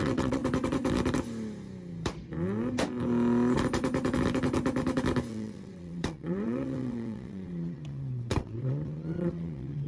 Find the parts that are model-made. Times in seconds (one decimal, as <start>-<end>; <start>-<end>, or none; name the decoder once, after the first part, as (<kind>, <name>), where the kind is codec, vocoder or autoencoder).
0.0-0.4 (vocoder, WaveNeXt); 5.3-9.9